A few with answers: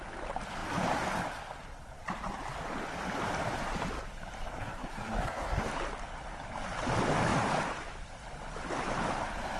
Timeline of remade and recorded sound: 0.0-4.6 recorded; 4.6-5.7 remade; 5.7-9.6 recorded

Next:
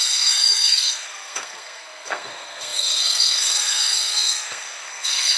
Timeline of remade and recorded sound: 0.0-5.4 remade

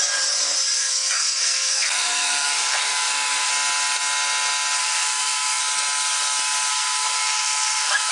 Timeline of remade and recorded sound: 0.0-0.8 recorded; 0.8-3.5 remade; 3.5-4.8 recorded; 4.8-5.6 remade; 5.6-6.7 recorded; 6.7-8.1 remade

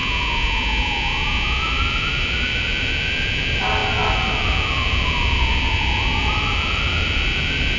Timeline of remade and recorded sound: 0.0-1.6 recorded; 1.6-7.8 remade

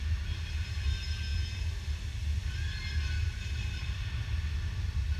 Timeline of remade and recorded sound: 0.0-5.2 recorded